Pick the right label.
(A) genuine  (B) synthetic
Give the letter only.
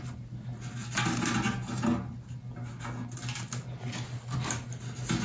A